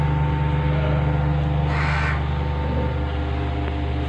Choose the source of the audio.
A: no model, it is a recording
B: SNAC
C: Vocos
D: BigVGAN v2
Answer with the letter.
A